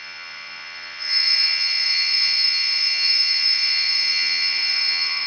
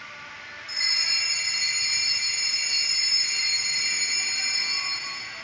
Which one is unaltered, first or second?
second